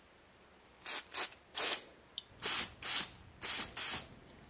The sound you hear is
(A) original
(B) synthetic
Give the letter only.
A